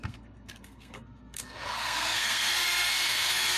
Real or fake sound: fake